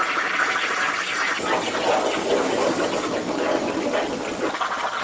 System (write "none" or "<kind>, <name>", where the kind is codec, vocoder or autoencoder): none